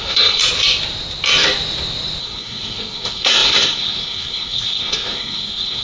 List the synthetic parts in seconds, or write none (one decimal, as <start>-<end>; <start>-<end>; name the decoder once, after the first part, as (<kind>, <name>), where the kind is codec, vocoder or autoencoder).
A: 0.0-0.4 (codec, SNAC); 2.2-5.8